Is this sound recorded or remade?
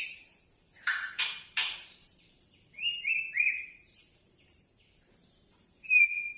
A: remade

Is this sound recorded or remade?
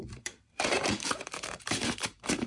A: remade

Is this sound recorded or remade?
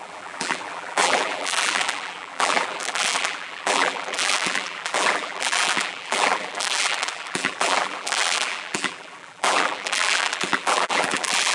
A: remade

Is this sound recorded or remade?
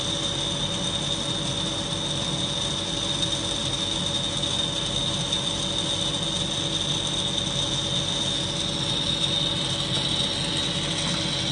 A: recorded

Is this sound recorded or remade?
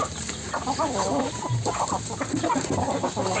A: recorded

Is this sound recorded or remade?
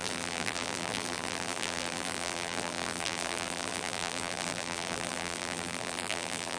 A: remade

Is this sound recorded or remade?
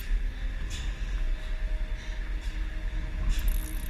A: recorded